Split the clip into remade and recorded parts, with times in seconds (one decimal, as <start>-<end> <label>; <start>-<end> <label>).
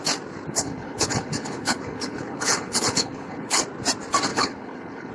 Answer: 0.0-0.5 recorded; 0.5-3.6 remade; 3.6-4.3 recorded; 4.3-5.1 remade